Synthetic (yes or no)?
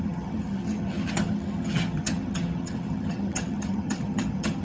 yes